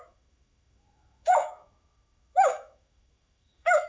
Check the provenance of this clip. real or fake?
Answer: fake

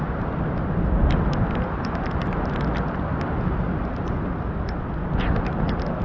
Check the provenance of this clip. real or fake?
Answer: real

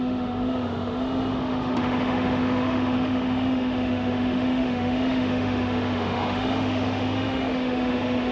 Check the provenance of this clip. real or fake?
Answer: fake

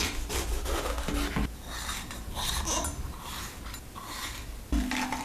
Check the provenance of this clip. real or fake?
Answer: real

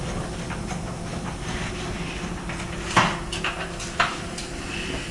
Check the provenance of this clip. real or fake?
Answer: real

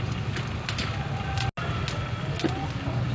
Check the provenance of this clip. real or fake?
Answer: real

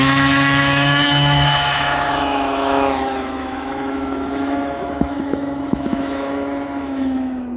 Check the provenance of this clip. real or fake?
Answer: fake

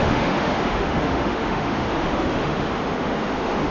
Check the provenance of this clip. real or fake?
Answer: fake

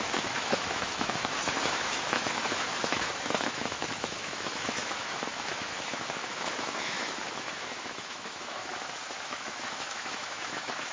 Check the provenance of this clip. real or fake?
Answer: fake